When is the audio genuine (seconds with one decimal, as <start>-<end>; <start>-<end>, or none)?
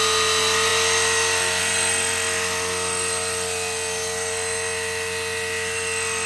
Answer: 0.0-6.3